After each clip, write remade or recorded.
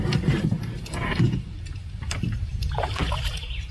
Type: remade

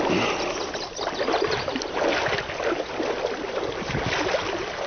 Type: recorded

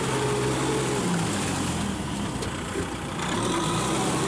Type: recorded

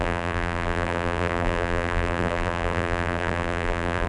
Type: remade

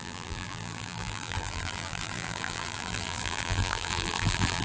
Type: remade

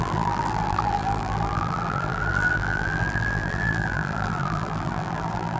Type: remade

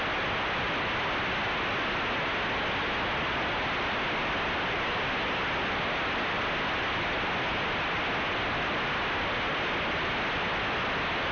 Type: recorded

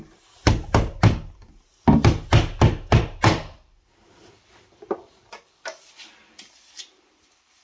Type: remade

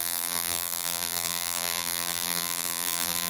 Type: remade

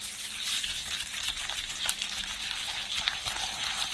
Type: recorded